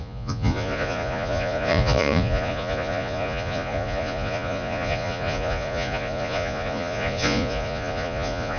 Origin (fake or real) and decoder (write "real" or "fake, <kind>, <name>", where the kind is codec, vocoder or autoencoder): fake, vocoder, Vocos